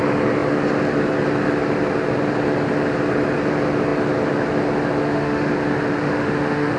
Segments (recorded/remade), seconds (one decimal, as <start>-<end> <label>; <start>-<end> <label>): 0.0-5.0 recorded; 5.0-5.5 remade; 5.5-6.0 recorded; 6.0-6.8 remade